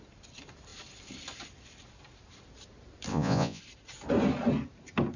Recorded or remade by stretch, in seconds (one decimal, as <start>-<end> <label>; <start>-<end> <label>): 0.0-3.1 recorded; 3.1-3.6 remade; 3.6-5.2 recorded